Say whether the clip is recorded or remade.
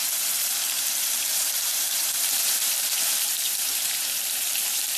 remade